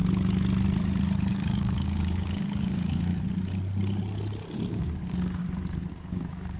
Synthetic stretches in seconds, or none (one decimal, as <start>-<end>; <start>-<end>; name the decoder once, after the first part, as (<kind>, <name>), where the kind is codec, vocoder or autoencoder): 1.3-3.1 (codec, DAC); 4.7-5.4; 5.9-6.6